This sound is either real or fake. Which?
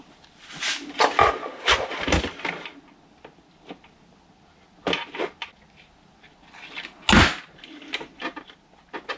real